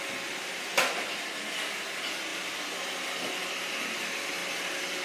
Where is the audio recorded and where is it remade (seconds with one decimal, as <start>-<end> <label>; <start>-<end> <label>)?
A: 0.0-5.0 recorded